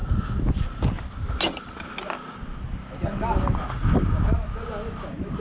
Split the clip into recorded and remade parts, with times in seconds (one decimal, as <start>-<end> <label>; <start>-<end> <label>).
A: 0.0-5.4 recorded